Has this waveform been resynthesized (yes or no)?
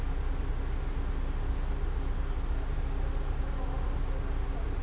no